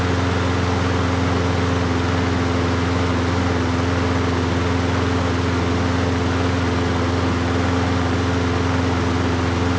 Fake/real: real